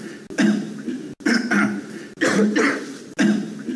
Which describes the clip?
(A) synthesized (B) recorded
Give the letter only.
B